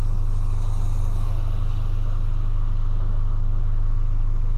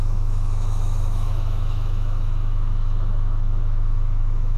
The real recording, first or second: first